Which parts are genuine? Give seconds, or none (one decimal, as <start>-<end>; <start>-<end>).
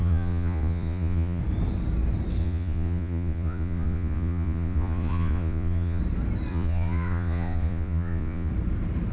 1.4-2.4; 6.0-6.5; 8.5-9.1